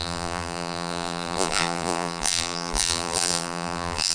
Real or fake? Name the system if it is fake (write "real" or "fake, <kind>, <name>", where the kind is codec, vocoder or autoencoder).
fake, vocoder, BigVGAN v2